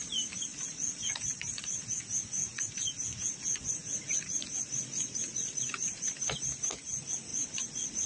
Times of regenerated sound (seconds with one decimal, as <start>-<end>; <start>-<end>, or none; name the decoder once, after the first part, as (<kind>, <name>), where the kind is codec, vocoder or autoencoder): 0.5-2.0 (vocoder, Vocos); 2.4-6.1; 7.3-8.1